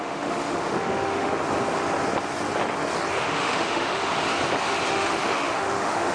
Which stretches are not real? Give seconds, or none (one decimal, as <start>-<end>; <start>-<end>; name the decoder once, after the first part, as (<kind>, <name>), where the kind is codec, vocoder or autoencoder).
0.0-1.3 (autoencoder, DAC-VAE); 3.1-4.1; 4.9-6.1